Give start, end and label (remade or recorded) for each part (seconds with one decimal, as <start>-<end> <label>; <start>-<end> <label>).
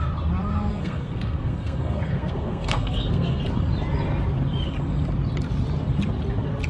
0.0-0.7 recorded; 0.7-3.4 remade; 3.4-6.7 recorded